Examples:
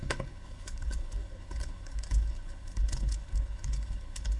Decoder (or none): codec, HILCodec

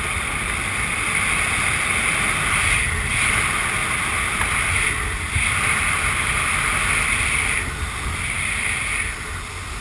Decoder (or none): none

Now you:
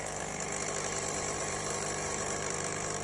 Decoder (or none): vocoder, BigVGAN v2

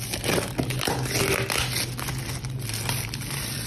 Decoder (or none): none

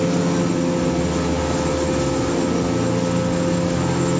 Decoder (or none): none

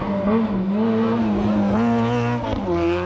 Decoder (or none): none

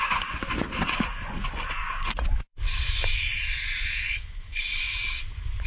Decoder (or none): vocoder, Vocos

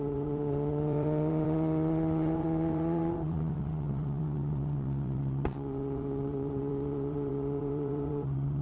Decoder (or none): vocoder, WaveNeXt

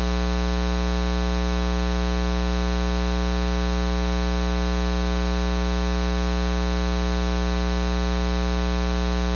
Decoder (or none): none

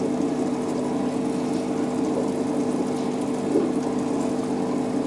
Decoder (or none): none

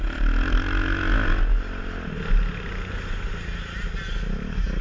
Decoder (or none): none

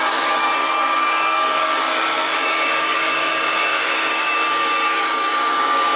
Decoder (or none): codec, DAC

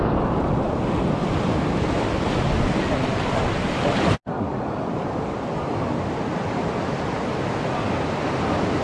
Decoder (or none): none